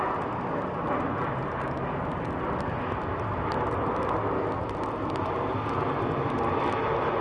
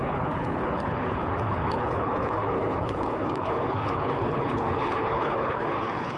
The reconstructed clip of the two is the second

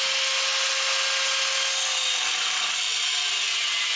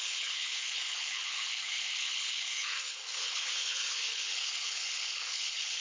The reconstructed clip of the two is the second